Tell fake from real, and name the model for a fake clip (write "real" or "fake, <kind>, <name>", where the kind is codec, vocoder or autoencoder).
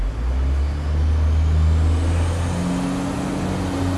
real